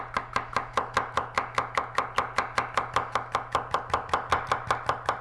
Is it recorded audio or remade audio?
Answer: recorded